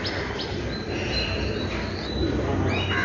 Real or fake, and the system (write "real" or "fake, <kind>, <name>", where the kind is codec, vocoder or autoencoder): real